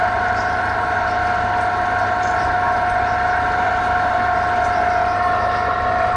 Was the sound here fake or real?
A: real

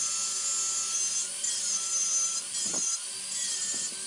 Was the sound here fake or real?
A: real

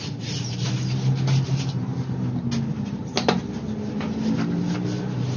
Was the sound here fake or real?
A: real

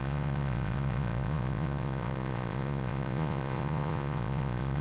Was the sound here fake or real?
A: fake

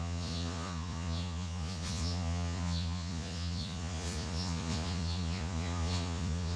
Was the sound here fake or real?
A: fake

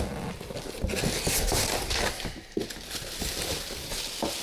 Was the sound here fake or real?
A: real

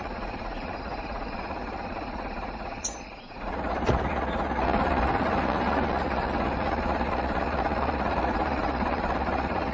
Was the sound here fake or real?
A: fake